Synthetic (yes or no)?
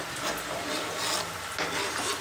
no